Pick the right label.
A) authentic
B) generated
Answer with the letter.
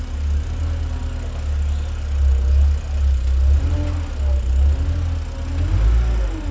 A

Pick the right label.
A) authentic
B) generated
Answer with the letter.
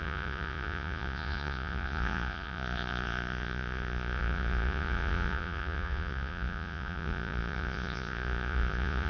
B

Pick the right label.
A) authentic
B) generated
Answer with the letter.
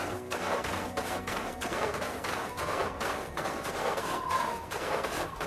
B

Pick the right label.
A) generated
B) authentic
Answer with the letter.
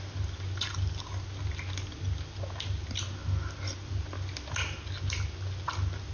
B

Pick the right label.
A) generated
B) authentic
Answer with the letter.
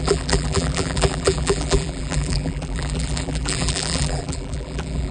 A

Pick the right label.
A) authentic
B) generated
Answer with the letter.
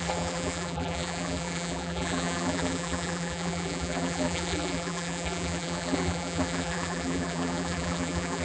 B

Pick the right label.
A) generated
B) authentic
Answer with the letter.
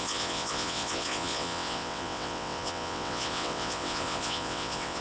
A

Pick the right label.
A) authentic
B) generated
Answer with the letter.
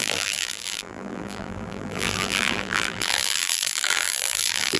B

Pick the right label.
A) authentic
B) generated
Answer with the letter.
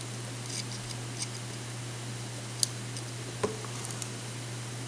A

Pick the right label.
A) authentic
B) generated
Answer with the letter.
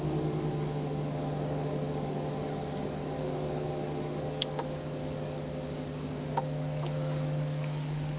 B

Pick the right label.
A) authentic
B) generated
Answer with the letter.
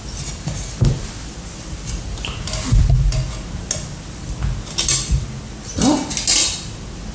A